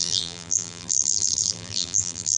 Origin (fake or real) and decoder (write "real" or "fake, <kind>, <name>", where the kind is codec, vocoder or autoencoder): fake, vocoder, BigVGAN v2